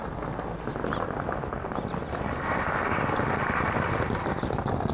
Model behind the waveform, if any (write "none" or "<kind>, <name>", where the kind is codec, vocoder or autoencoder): none